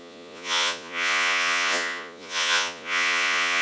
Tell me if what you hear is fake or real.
fake